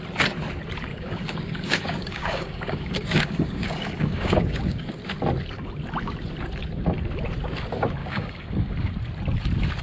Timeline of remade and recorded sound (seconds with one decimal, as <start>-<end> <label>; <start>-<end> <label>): 0.0-0.9 recorded; 0.9-5.1 remade; 5.1-8.0 recorded; 8.0-8.9 remade; 8.9-9.8 recorded